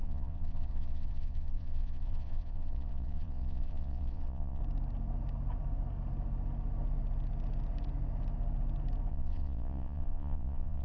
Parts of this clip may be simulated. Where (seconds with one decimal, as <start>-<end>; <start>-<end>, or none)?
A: 0.0-4.6; 9.1-10.8